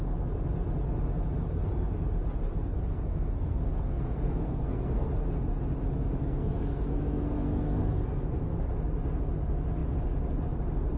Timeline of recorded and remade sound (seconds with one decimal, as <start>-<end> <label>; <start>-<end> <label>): 0.0-2.6 recorded; 2.6-5.1 remade; 5.1-6.2 recorded; 6.2-8.2 remade; 8.2-11.0 recorded